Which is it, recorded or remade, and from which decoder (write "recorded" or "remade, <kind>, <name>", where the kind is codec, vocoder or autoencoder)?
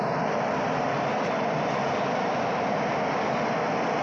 recorded